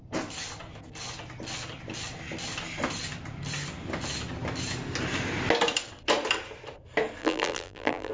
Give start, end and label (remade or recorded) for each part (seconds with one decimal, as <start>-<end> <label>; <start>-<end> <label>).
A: 0.0-7.2 recorded; 7.2-8.1 remade